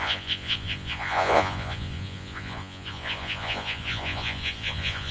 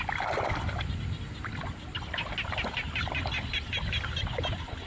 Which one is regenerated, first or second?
first